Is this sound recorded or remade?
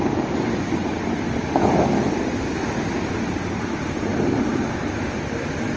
recorded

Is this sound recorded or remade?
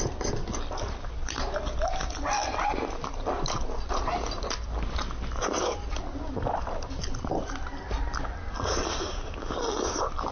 recorded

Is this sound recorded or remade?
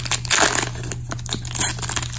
recorded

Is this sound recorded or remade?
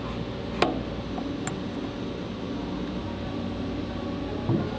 recorded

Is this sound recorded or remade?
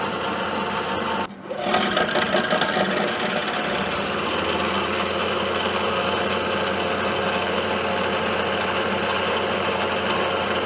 recorded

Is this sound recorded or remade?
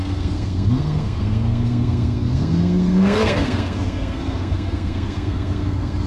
remade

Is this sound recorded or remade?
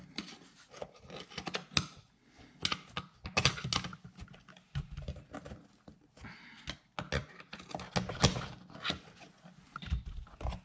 recorded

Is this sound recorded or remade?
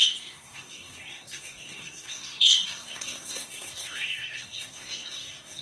remade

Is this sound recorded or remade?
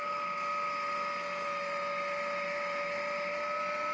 recorded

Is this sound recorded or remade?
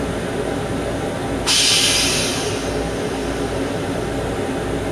recorded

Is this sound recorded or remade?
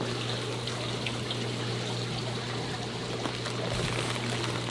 recorded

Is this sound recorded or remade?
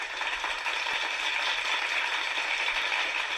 recorded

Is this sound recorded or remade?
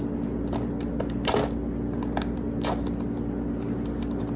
recorded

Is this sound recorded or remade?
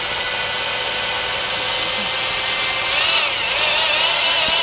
recorded